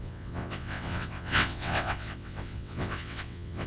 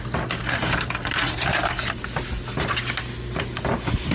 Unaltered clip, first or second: second